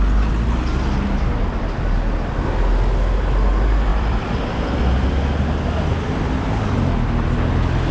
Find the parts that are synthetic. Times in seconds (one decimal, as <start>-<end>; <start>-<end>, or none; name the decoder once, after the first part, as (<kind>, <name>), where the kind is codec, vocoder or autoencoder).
3.9-4.8 (vocoder, BigVGAN v2)